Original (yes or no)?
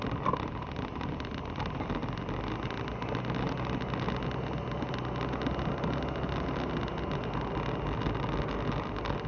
yes